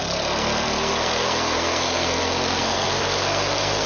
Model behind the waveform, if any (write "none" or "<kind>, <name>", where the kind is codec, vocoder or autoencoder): codec, SNAC